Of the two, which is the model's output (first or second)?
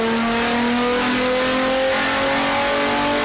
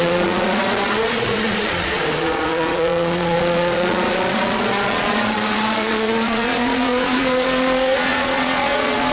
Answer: second